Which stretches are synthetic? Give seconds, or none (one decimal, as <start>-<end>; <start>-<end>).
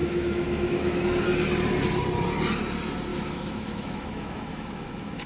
0.0-1.0; 3.1-5.3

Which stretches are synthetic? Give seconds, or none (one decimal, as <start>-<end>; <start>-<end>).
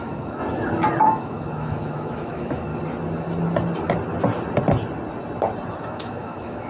0.0-0.4; 1.0-2.7; 5.8-6.7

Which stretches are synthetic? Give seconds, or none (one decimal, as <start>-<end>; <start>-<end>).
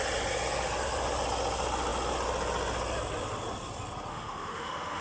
4.1-5.0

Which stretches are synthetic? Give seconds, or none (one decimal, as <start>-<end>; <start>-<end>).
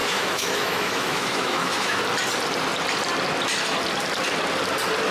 0.0-2.0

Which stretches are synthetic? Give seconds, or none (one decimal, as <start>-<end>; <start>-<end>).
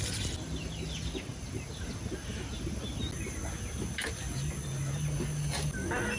none